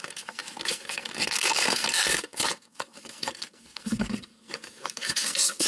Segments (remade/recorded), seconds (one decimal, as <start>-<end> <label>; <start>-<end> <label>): 0.0-5.7 remade